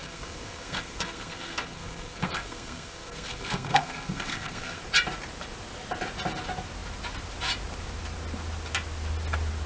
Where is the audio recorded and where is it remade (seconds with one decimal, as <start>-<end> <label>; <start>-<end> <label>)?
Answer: 0.0-4.8 remade; 4.8-9.7 recorded